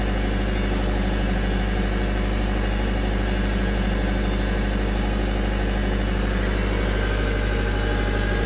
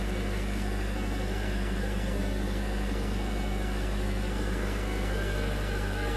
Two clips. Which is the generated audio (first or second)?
second